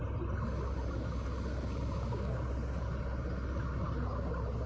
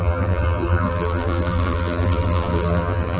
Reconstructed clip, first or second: second